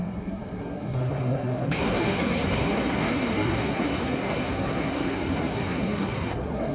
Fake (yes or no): yes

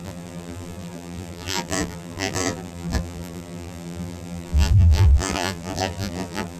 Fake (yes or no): yes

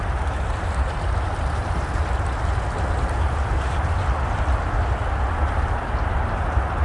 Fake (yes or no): no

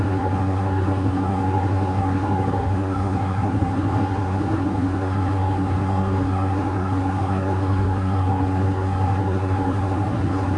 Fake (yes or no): yes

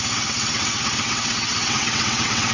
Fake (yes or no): yes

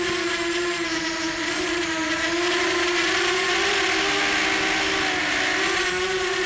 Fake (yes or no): no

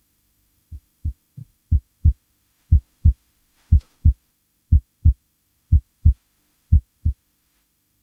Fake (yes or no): yes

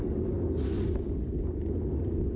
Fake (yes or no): no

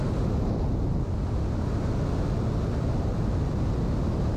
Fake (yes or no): no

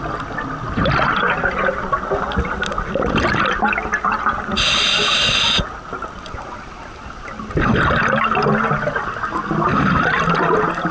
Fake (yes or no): no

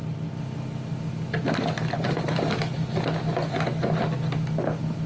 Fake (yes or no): no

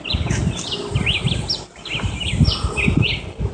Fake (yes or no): no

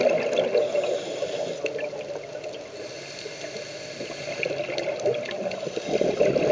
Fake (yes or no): no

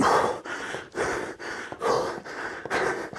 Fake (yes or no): no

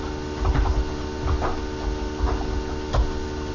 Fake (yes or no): no